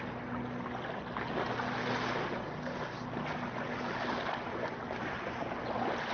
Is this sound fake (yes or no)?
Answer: no